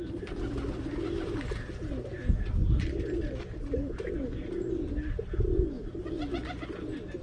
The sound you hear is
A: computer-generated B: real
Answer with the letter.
B